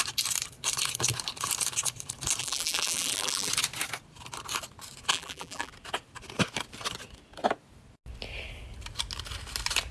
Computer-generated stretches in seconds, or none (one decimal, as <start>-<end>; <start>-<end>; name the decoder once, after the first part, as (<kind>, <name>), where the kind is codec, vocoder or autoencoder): 2.4-3.5 (vocoder, BigVGAN v2); 5.1-5.7